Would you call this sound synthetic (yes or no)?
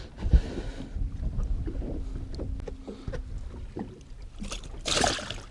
no